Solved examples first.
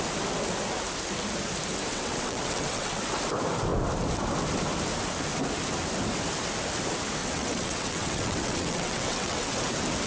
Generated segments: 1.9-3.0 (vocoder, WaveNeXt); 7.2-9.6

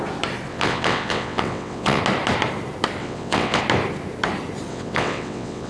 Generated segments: 0.5-2.0 (vocoder, WaveNeXt); 3.0-3.6; 4.7-5.7